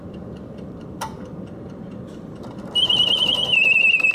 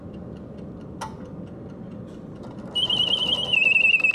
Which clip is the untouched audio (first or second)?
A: second